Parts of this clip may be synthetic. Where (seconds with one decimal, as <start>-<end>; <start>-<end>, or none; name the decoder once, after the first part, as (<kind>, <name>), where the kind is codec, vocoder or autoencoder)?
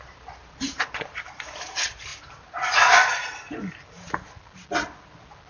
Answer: none